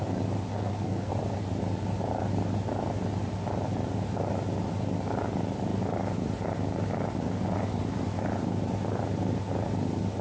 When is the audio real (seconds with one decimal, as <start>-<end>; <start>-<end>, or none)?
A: 0.0-0.5; 1.1-10.2